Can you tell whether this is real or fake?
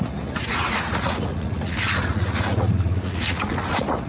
fake